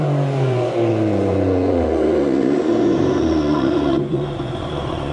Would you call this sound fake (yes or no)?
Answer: yes